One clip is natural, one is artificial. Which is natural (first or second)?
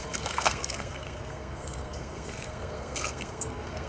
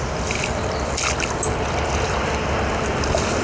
second